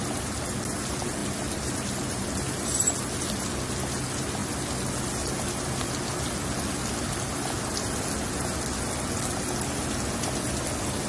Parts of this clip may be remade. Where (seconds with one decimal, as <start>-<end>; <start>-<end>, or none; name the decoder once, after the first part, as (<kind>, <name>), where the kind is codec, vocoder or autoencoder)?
none